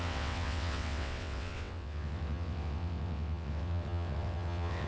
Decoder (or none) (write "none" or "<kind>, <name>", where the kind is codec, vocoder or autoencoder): vocoder, WaveNeXt